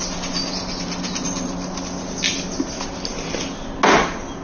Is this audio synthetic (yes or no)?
no